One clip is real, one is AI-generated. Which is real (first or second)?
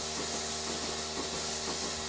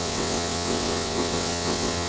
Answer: first